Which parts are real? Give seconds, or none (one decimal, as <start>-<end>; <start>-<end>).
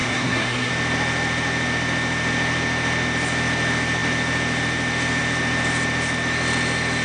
0.7-7.0